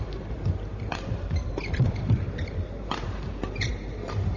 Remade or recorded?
remade